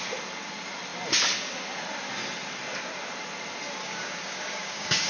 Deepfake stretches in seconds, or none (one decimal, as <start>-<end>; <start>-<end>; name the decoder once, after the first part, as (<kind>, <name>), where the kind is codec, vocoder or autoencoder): 3.8-5.1 (codec, DAC)